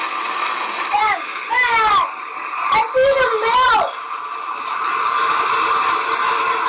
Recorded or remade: recorded